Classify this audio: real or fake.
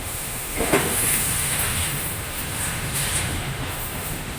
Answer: fake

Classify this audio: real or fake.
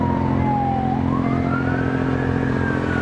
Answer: real